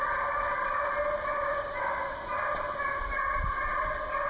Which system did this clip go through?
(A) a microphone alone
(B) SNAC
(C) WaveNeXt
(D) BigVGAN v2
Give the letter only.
A